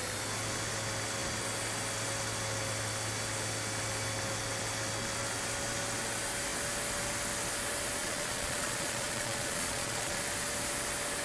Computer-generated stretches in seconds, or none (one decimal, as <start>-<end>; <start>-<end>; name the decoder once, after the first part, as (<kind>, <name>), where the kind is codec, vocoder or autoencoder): 8.0-10.2 (vocoder, Vocos)

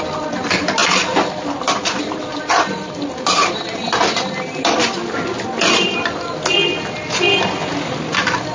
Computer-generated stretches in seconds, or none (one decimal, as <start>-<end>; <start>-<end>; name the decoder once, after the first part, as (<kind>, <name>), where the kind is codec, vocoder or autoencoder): none